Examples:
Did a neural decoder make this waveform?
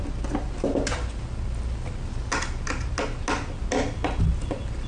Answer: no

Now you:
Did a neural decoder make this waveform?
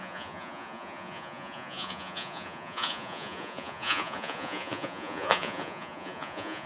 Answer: yes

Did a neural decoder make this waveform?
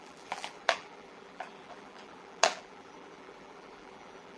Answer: yes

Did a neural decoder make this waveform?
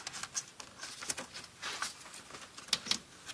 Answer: no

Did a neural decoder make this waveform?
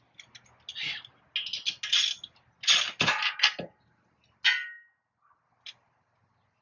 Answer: no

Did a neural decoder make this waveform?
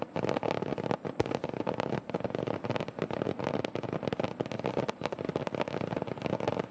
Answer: no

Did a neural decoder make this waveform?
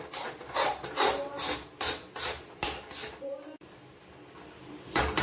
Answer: no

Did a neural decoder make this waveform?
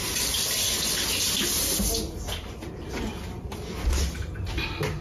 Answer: no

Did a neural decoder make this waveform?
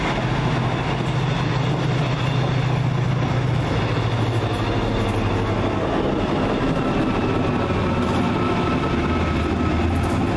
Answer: no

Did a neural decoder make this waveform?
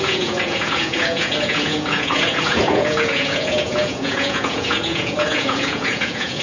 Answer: yes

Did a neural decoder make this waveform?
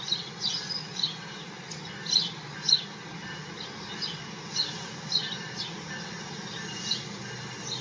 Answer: no